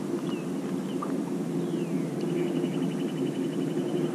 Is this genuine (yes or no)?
yes